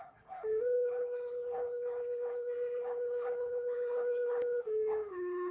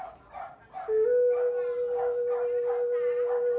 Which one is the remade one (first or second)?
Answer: first